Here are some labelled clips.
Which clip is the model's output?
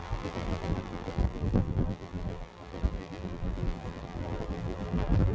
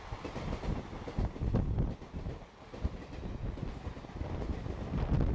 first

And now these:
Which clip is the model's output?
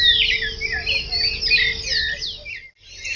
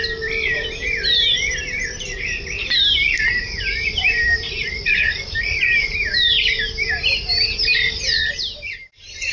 second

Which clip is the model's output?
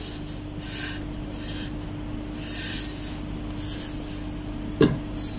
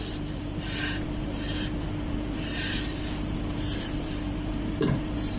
second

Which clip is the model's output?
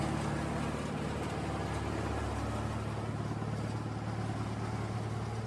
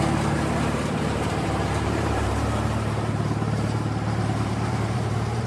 second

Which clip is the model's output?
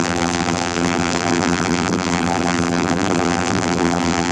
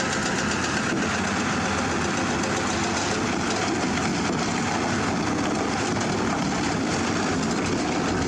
first